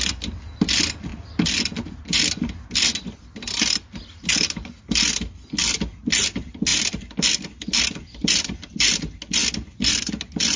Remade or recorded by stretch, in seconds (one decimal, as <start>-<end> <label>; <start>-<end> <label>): 0.0-10.6 recorded